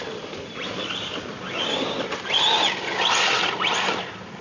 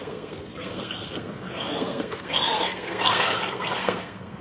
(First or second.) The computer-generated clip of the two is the second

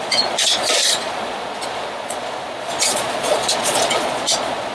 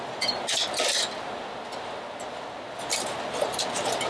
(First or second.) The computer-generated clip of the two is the first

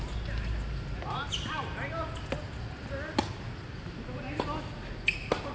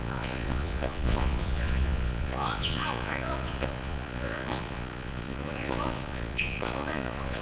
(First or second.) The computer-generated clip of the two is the second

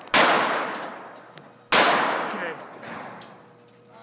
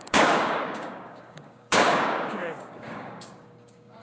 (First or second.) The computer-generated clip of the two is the second